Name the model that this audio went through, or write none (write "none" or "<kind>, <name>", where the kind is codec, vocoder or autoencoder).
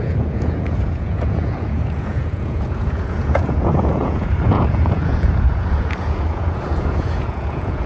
vocoder, Vocos